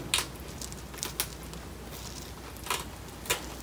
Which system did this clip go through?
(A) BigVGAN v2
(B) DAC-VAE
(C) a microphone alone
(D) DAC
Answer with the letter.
C